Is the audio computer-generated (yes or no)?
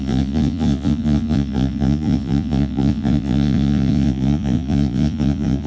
yes